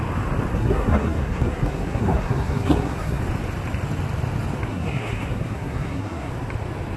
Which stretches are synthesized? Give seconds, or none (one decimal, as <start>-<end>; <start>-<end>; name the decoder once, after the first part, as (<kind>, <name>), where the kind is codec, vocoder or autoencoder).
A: 0.5-3.2 (codec, SNAC); 4.7-6.3